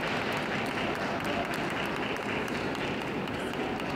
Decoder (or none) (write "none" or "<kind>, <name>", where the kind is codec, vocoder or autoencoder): none